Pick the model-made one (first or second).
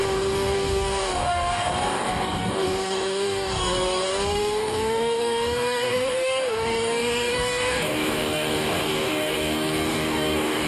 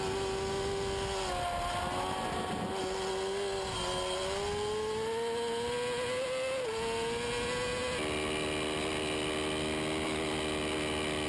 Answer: first